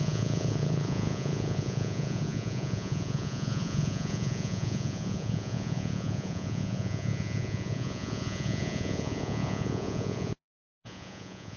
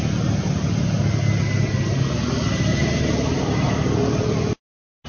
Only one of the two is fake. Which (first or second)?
first